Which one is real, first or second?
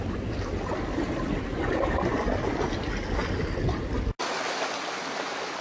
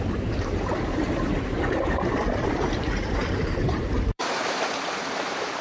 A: first